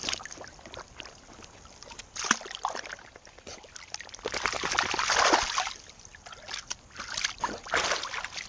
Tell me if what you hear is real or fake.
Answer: real